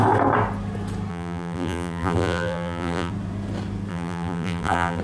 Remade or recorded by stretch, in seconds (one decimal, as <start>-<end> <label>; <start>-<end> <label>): 0.0-1.1 recorded; 1.1-3.1 remade; 3.1-3.9 recorded; 3.9-5.0 remade